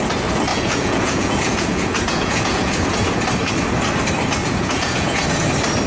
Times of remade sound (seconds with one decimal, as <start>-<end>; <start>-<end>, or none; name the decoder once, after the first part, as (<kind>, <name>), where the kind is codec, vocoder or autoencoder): 0.5-3.2 (vocoder, Vocos); 4.4-5.2